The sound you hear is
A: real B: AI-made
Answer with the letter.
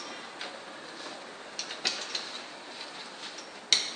A